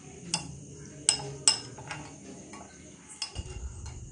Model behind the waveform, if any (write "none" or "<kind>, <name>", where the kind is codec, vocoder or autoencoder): none